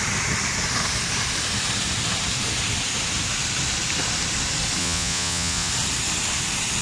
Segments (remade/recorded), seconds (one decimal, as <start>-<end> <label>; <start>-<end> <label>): 0.0-4.8 recorded; 4.8-5.7 remade; 5.7-6.8 recorded